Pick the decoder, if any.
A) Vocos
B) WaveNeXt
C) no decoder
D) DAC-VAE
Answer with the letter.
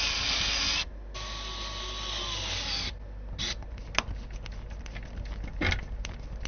C